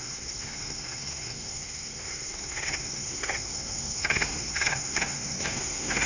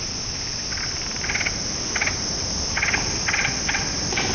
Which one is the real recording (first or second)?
second